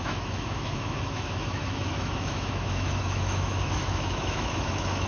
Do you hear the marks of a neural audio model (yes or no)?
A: yes